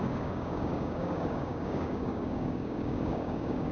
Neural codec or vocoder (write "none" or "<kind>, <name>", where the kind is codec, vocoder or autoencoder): codec, DAC